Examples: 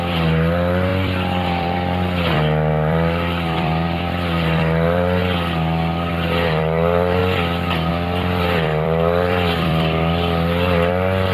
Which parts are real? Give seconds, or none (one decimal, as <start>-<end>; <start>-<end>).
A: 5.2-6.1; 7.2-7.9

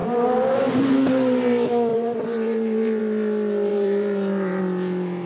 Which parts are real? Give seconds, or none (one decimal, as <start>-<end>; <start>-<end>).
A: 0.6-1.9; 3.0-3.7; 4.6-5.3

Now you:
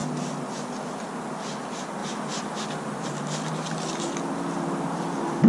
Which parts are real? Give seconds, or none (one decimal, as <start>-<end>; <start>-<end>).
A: 0.0-5.5

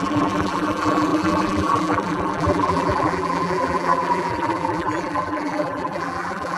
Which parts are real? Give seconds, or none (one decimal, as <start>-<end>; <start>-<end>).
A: none

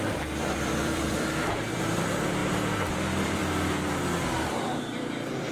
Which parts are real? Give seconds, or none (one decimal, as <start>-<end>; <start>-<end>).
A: 3.4-4.4

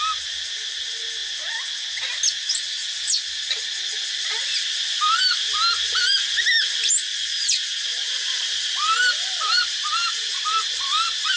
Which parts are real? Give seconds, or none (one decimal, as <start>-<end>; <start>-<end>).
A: 0.0-4.0; 4.7-8.2; 9.6-11.4

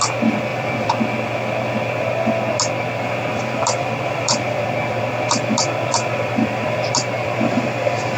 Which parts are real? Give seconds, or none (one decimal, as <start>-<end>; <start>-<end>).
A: 0.0-0.5; 1.0-3.3